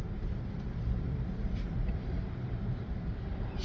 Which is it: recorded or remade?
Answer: remade